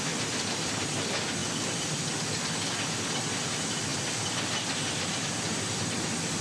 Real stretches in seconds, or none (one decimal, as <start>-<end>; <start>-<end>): 0.0-6.4